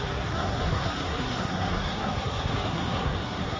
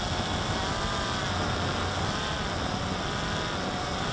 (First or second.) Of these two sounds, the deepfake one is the first